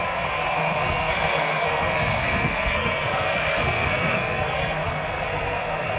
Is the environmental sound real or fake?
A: fake